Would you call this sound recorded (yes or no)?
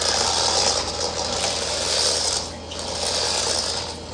yes